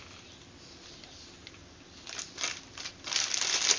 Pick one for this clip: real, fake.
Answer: real